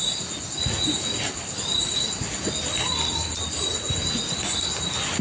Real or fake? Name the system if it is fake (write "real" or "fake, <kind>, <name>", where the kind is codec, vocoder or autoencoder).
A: real